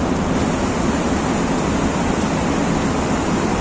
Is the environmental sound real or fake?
real